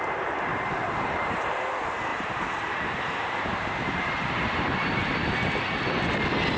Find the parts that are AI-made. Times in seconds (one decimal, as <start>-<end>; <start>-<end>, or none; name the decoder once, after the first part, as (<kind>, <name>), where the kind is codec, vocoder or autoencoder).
0.5-1.5 (vocoder, BigVGAN v2); 2.1-5.3